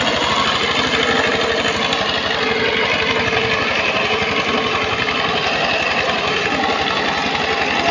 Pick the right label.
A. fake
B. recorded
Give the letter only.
B